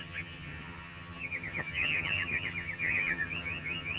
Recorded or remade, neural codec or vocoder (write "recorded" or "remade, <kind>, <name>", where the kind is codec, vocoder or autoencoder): remade, vocoder, HiFi-GAN